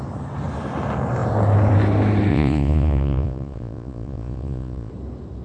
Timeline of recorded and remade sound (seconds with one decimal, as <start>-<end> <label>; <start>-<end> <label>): 0.0-2.3 recorded; 2.3-4.9 remade; 4.9-5.4 recorded